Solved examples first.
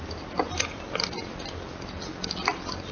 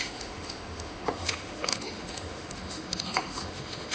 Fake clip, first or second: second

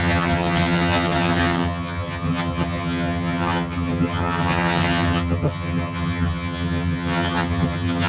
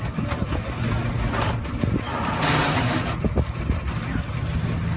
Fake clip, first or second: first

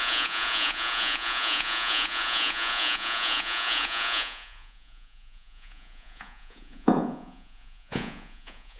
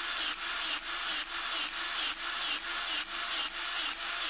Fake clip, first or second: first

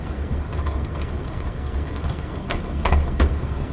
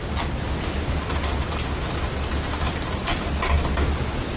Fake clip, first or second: first